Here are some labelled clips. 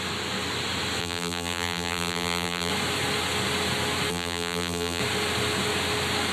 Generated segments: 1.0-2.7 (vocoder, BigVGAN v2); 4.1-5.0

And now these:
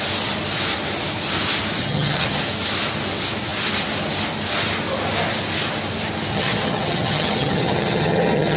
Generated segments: 1.8-2.4 (vocoder, HiFi-GAN); 6.3-8.6

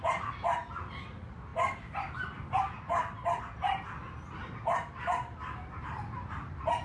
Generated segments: none

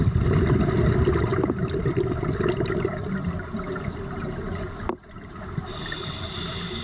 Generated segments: none

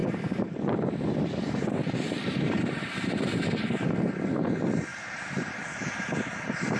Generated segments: 0.0-3.9 (vocoder, BigVGAN v2); 4.9-6.8

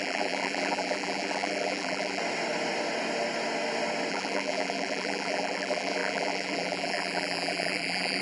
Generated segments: 0.0-2.2 (vocoder, BigVGAN v2); 4.1-8.2

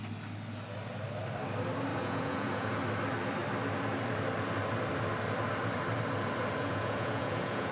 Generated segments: 1.9-2.7 (vocoder, Vocos); 6.6-7.7

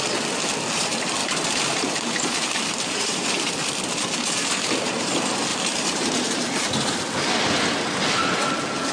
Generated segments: 1.2-3.5 (vocoder, BigVGAN v2); 4.4-5.1; 5.5-7.6